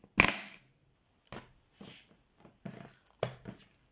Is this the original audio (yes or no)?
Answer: yes